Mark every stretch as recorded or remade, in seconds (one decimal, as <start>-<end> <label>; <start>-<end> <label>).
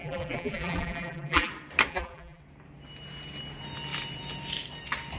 0.0-1.5 remade; 1.5-1.9 recorded; 1.9-2.4 remade; 2.4-5.2 recorded